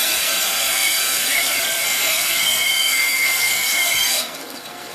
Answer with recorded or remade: remade